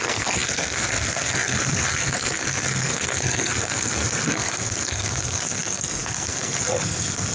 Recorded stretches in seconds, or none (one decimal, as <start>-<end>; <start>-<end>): none